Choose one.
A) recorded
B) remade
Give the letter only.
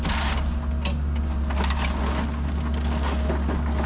A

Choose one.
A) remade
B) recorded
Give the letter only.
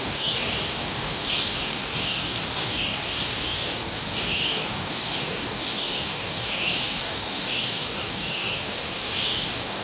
A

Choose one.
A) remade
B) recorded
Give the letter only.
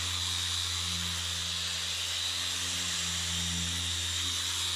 B